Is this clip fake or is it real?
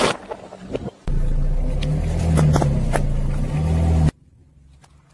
real